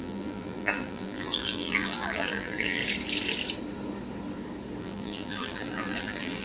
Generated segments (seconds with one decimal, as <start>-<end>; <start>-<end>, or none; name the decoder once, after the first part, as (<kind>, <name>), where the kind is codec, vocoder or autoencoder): 0.0-2.8 (vocoder, BigVGAN v2); 4.8-6.4